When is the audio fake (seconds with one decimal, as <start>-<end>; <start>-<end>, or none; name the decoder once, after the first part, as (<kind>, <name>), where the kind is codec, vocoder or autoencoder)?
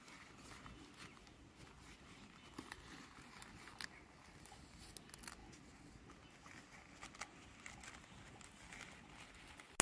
none